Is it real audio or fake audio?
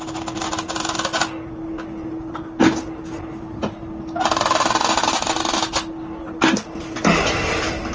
real